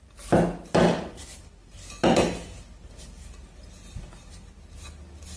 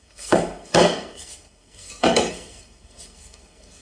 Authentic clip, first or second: first